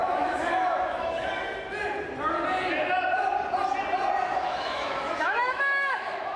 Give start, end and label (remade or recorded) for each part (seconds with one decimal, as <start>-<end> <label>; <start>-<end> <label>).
0.0-1.3 remade; 1.3-4.3 recorded; 4.3-6.4 remade